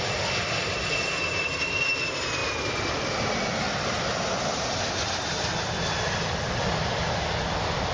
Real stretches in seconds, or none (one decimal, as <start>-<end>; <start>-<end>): 0.0-7.9